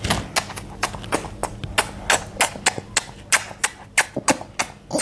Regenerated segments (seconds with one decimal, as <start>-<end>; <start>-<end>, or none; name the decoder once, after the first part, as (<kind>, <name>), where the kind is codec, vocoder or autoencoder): none